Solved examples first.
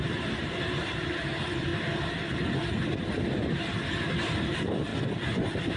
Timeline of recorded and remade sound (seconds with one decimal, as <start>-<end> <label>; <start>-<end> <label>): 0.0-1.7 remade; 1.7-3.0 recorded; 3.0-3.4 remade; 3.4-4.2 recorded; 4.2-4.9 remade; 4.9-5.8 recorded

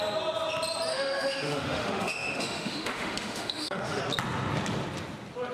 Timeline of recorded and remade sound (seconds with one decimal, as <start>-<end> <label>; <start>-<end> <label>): 0.0-0.9 recorded; 0.9-4.0 remade; 4.0-5.5 recorded

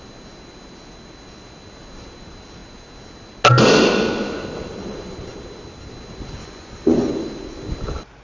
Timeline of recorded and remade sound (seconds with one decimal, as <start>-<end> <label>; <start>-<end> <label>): 0.0-6.4 recorded; 6.4-7.1 remade; 7.1-8.2 recorded

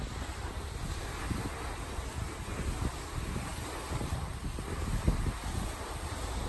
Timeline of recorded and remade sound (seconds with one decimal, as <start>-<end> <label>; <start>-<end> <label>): 0.0-6.5 recorded